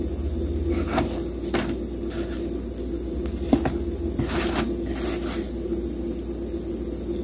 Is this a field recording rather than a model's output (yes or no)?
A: yes